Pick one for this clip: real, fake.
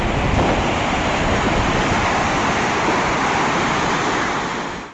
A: real